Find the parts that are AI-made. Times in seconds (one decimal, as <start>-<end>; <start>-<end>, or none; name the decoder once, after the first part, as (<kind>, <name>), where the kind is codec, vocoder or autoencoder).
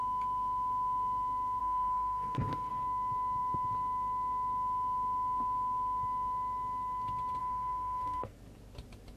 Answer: 1.6-2.7 (codec, SNAC); 7.4-8.4